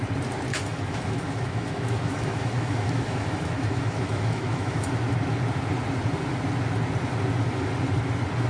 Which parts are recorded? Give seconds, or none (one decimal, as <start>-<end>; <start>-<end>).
0.0-0.5; 4.9-8.5